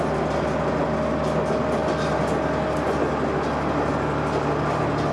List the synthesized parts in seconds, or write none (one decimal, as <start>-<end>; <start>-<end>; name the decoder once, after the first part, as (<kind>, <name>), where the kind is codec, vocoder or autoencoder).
none